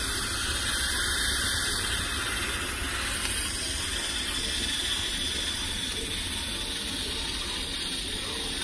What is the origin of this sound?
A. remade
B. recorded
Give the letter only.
B